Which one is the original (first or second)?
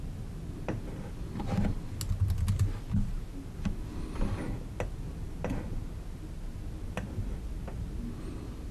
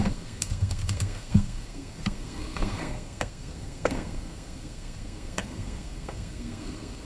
first